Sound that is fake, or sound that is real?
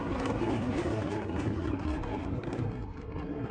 fake